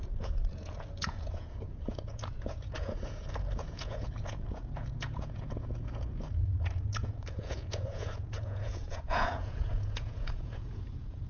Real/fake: fake